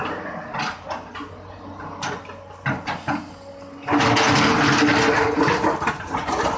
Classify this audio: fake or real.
real